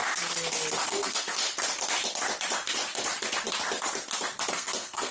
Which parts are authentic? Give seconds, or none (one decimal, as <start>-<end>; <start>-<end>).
0.0-0.9; 1.4-4.5